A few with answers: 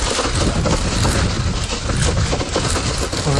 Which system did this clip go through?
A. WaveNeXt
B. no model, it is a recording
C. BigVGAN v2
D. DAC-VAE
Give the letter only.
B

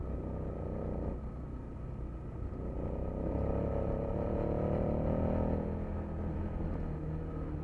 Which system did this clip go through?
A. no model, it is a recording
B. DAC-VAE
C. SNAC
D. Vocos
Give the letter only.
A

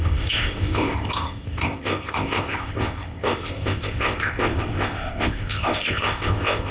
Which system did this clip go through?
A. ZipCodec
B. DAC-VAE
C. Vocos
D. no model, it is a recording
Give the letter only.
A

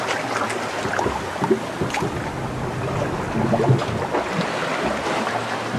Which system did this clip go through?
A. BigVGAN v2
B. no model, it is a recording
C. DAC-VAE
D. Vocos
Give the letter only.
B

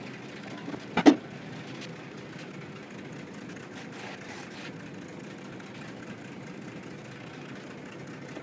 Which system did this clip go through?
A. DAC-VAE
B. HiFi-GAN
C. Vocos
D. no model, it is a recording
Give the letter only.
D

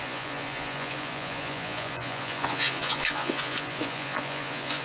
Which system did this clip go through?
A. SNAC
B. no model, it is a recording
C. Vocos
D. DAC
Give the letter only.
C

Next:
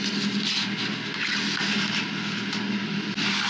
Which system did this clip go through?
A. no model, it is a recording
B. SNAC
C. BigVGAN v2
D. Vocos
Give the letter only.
A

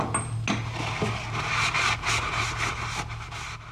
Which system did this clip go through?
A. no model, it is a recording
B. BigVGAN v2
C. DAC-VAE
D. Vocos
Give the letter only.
A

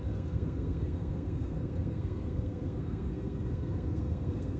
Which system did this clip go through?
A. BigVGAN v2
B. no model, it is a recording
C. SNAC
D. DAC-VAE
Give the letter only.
C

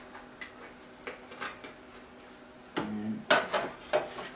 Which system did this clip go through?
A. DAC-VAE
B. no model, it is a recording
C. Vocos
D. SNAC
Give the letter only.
B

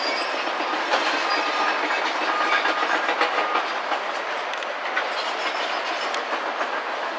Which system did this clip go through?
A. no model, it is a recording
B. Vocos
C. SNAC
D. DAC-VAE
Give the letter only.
A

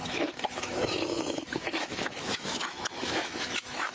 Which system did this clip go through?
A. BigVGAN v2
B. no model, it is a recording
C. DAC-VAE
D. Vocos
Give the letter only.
C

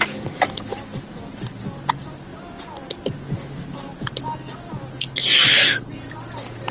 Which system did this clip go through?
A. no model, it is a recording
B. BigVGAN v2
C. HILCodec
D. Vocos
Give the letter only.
A